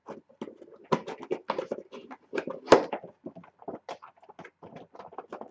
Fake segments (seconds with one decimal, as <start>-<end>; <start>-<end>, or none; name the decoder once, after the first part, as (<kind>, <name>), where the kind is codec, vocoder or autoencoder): none